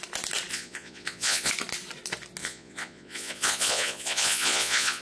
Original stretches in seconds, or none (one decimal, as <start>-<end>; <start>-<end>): 0.0-0.5; 1.5-2.4